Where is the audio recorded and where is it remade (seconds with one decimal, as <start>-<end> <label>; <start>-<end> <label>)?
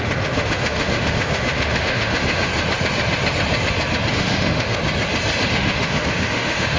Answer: 0.0-2.5 remade; 2.5-4.1 recorded; 4.1-4.8 remade; 4.8-5.5 recorded; 5.5-6.8 remade